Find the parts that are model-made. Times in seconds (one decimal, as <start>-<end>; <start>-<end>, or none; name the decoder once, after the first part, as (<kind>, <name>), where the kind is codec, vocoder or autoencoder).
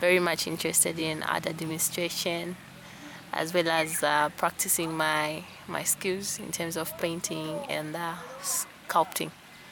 1.0-1.7 (vocoder, BigVGAN v2); 2.1-2.7